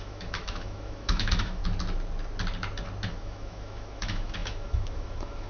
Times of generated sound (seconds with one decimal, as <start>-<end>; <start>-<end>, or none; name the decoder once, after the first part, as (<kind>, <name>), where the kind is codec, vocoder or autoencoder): 0.0-1.6 (autoencoder, DAC-VAE); 3.1-5.5